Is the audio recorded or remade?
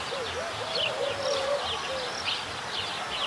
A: recorded